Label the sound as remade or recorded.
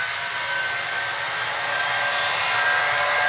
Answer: recorded